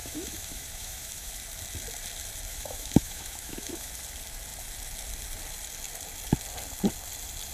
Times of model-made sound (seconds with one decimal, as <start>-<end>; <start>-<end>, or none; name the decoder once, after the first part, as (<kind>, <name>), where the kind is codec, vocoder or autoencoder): 0.0-1.3 (autoencoder, DAC-VAE); 2.5-3.9